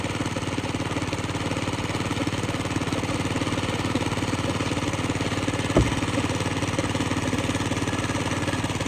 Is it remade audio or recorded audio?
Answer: recorded